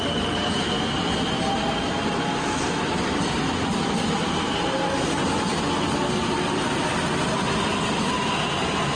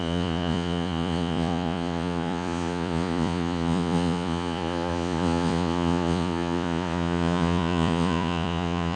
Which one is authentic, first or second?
first